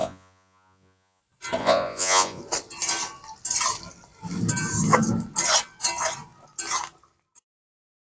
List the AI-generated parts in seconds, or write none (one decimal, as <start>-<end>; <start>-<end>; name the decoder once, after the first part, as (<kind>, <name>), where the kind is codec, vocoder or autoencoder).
0.0-1.2 (vocoder, Vocos); 1.6-2.4